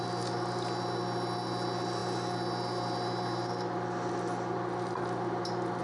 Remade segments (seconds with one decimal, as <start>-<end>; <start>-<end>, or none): none